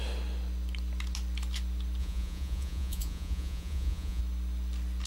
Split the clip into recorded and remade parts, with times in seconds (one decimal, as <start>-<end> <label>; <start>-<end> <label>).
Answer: 0.0-2.0 recorded; 2.0-4.2 remade; 4.2-5.1 recorded